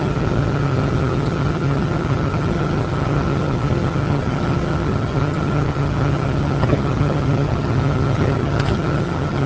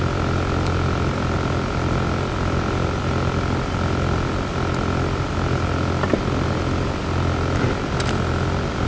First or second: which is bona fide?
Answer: second